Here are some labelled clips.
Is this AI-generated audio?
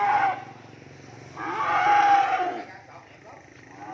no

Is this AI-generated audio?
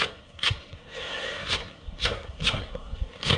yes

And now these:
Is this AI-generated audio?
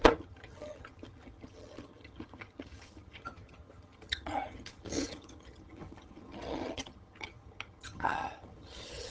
yes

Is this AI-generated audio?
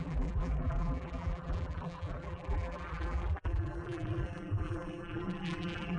yes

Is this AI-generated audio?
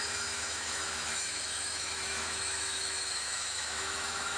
yes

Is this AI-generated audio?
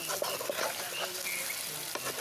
no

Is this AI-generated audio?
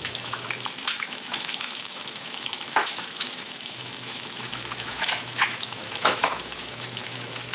yes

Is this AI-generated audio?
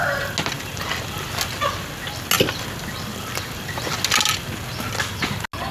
no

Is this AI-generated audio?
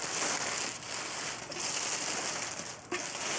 no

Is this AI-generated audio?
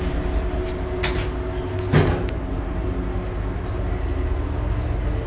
no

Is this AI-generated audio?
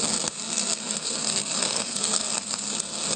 yes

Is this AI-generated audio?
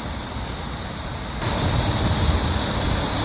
no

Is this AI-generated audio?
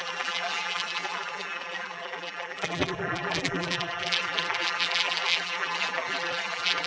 yes